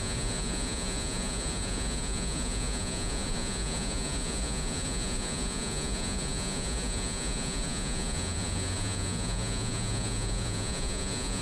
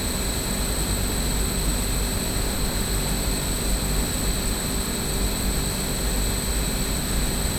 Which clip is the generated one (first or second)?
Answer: first